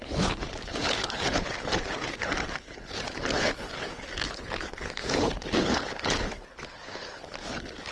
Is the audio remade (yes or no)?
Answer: yes